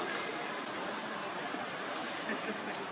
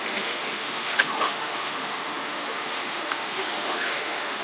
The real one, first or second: first